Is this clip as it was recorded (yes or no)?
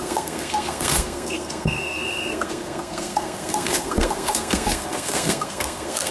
no